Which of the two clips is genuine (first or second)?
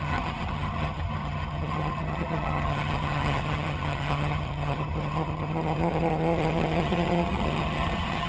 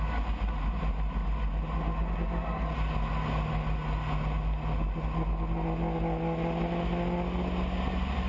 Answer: second